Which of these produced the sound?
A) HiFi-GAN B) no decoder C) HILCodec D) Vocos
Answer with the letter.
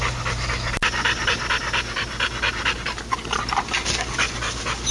B